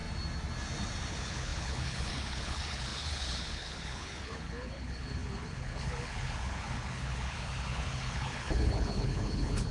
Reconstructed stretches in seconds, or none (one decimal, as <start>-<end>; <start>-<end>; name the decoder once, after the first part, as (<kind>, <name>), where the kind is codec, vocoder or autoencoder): 1.1-9.7 (codec, HILCodec)